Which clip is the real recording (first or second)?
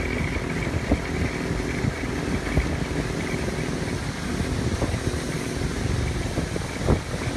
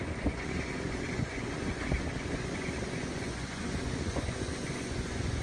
first